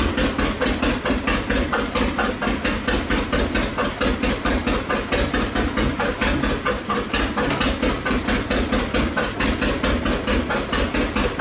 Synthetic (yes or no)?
no